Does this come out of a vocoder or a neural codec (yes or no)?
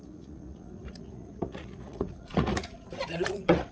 yes